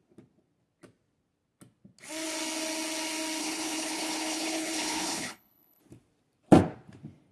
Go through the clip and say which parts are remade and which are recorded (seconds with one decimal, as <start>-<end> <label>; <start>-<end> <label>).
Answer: 0.0-3.4 recorded; 3.4-5.8 remade; 5.8-7.3 recorded